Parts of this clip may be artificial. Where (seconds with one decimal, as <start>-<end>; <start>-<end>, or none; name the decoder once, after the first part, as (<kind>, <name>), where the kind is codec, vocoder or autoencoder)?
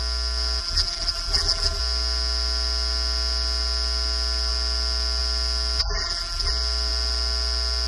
0.6-1.8 (vocoder, BigVGAN v2); 5.8-6.5